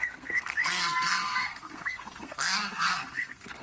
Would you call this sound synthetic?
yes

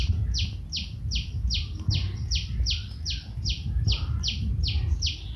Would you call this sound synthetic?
no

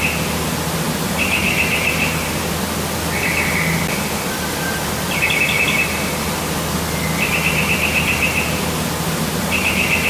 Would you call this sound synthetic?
no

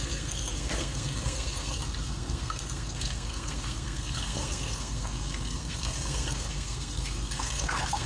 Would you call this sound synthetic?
yes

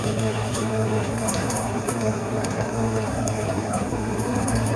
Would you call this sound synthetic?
yes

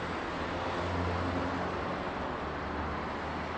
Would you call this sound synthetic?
no